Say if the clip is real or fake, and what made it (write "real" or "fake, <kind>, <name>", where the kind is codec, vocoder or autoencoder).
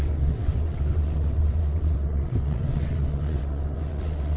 fake, vocoder, WaveNeXt